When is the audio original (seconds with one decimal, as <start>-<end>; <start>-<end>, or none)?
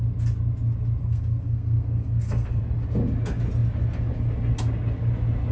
0.0-1.0; 2.6-5.5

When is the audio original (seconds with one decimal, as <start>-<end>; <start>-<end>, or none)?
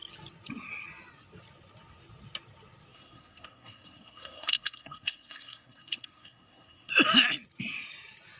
0.0-2.9; 6.9-8.4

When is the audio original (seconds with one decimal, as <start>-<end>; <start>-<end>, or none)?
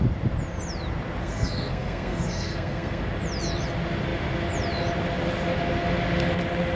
0.0-1.2; 3.0-6.8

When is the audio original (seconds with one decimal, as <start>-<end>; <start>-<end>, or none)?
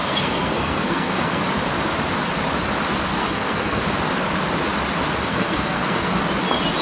1.4-3.2; 3.8-5.2; 6.2-6.8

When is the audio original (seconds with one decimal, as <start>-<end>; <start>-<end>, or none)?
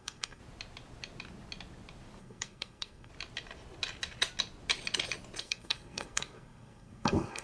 0.4-2.2; 3.1-5.4